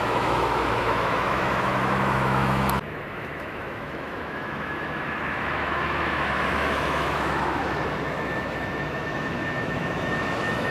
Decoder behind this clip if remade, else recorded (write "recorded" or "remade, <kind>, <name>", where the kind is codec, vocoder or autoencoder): remade, autoencoder, DAC-VAE